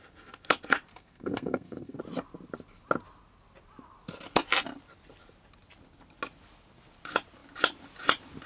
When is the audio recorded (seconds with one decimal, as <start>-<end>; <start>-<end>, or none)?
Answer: 0.0-0.9; 2.0-8.5

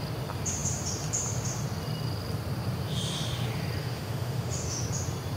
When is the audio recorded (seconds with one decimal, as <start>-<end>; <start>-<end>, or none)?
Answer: 0.0-3.8; 4.8-5.4

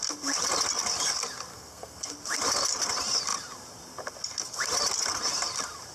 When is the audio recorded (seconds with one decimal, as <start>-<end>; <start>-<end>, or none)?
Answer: 0.0-1.5; 2.1-5.9

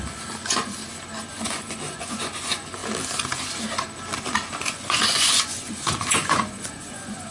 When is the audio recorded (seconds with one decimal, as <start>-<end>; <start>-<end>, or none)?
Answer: 0.8-1.3; 2.8-4.6

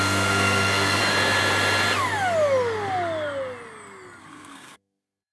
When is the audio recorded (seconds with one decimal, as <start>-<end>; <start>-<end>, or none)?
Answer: 1.0-4.2